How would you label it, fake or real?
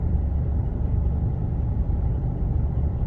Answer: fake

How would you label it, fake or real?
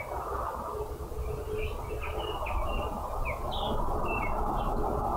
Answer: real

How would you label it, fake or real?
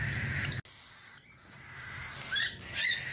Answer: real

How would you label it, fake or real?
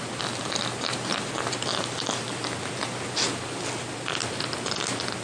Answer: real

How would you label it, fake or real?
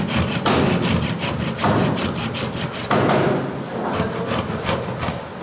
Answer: real